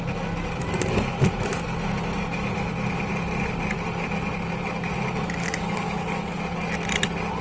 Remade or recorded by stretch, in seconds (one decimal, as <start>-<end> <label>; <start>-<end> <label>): 0.0-5.4 recorded; 5.4-6.4 remade; 6.4-7.4 recorded